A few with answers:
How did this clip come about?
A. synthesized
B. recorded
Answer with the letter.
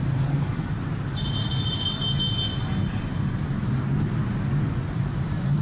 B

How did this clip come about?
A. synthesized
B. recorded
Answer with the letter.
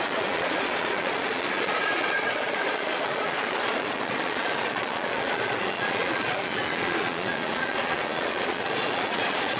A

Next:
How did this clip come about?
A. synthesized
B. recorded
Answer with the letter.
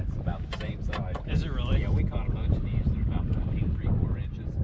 B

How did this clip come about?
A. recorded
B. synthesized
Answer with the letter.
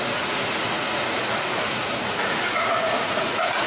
B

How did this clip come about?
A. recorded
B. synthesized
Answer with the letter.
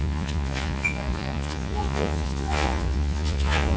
B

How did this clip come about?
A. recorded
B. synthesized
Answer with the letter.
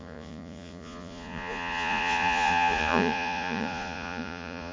B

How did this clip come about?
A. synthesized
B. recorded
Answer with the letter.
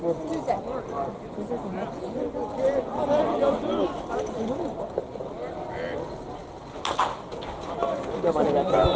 B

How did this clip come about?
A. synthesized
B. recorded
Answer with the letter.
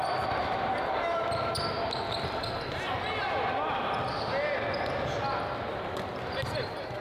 B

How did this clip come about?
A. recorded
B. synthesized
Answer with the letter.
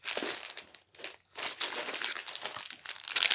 A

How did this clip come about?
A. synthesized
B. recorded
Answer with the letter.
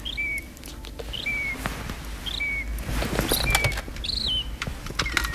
B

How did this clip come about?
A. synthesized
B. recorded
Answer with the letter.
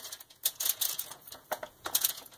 A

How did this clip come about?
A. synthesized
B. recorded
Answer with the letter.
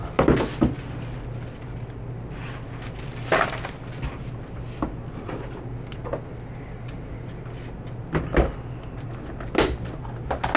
B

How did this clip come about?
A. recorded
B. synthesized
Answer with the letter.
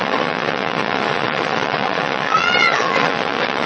B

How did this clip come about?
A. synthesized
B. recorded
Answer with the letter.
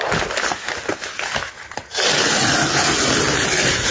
B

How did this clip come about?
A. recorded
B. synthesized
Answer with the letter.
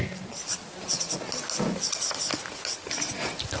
A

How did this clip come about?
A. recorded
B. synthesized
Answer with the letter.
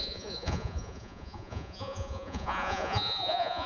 B